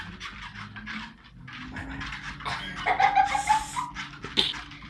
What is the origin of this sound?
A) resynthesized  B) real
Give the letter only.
B